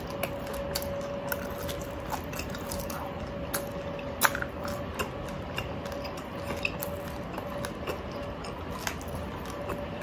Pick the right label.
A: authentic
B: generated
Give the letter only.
A